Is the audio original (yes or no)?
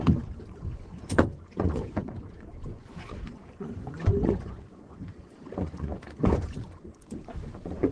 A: no